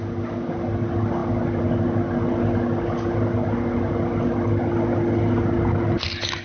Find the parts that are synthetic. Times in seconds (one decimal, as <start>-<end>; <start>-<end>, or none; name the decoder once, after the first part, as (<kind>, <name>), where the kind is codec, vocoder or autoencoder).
none